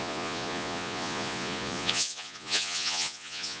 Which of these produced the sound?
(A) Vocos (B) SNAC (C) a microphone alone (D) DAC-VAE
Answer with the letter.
A